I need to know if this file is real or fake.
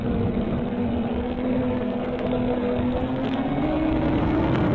fake